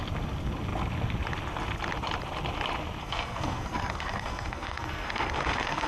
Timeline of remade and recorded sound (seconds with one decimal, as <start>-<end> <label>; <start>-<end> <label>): 0.0-3.0 recorded; 3.0-5.9 remade